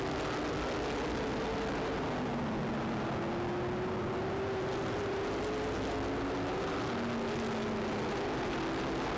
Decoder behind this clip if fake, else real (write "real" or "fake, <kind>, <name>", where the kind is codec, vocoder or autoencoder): real